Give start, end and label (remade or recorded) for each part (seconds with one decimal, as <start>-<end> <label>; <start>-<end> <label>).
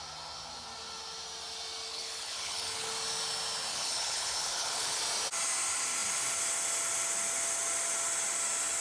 0.0-1.9 recorded; 1.9-2.9 remade; 2.9-3.7 recorded; 3.7-5.0 remade; 5.0-8.8 recorded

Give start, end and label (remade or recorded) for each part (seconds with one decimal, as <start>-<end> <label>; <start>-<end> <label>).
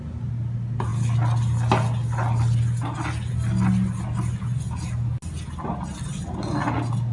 0.0-7.1 recorded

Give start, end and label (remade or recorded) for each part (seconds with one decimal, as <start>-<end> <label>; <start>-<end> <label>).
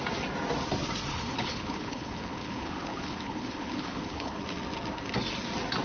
0.0-1.1 recorded; 1.1-4.4 remade; 4.4-5.8 recorded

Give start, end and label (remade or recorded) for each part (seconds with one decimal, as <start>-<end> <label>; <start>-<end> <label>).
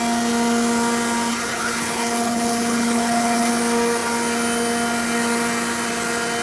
0.0-1.3 recorded; 1.3-3.5 remade; 3.5-6.4 recorded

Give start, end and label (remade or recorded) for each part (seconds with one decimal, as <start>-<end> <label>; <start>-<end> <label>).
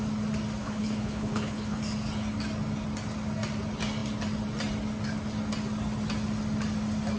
0.0-0.6 recorded; 0.6-1.8 remade; 1.8-7.2 recorded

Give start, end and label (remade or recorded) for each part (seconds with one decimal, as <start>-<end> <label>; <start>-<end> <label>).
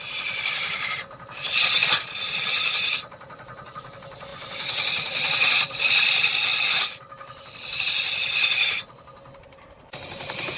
0.0-10.6 recorded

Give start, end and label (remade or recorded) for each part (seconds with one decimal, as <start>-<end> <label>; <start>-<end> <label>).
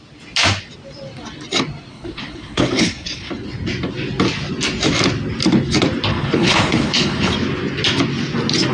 0.0-1.9 recorded; 1.9-3.3 remade; 3.3-6.1 recorded; 6.1-7.3 remade; 7.3-8.7 recorded